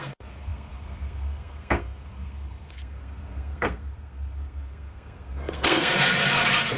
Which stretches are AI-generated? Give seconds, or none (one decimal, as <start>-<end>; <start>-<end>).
0.0-5.9